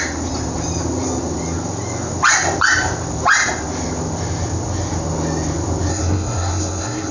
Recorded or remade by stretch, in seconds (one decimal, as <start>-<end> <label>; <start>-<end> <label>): 0.0-5.9 recorded; 5.9-7.1 remade